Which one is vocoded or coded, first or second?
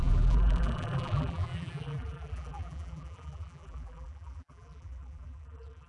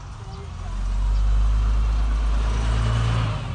first